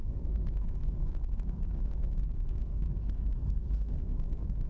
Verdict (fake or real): fake